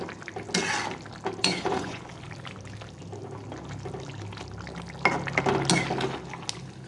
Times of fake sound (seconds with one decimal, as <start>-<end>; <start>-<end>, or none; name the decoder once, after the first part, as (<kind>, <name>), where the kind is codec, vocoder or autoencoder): 1.4-2.0 (vocoder, Vocos)